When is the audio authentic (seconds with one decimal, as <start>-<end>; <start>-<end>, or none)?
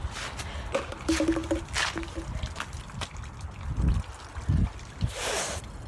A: 0.0-5.9